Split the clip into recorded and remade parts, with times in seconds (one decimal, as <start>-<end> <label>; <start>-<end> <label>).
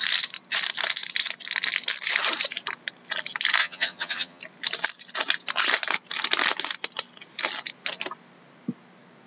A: 0.0-3.6 recorded; 3.6-4.4 remade; 4.4-9.3 recorded